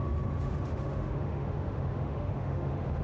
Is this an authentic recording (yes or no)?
no